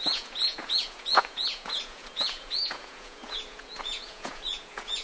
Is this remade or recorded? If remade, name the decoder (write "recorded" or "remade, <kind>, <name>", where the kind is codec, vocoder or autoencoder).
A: remade, vocoder, Vocos